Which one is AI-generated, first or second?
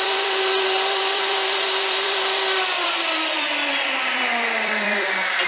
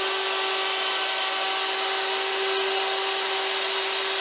first